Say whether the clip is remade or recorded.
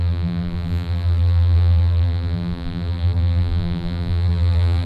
remade